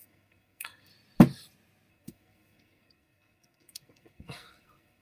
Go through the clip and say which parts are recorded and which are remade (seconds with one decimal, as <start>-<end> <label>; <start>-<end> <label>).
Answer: 0.0-0.9 remade; 0.9-1.9 recorded; 1.9-5.0 remade